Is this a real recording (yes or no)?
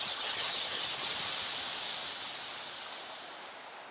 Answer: yes